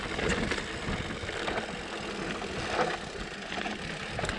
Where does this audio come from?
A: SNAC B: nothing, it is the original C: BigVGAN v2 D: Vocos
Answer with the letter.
B